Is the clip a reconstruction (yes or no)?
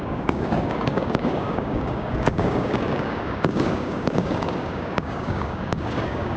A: yes